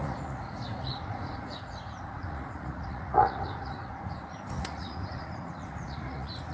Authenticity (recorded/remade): remade